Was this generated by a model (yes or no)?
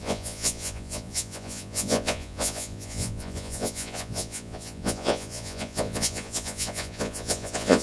yes